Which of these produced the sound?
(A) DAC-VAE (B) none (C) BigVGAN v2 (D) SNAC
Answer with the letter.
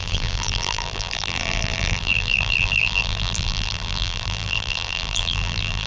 C